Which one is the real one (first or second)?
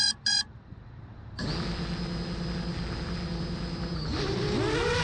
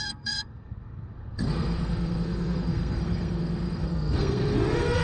first